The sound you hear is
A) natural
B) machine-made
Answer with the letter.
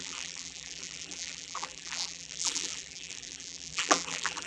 B